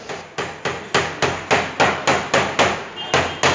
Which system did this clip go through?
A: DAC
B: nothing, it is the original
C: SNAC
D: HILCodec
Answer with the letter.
B